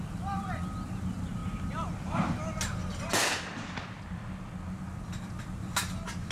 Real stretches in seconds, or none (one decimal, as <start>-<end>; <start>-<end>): 0.0-6.3